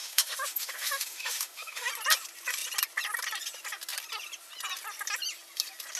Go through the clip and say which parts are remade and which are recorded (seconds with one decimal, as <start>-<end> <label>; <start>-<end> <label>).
0.0-1.9 remade; 1.9-6.0 recorded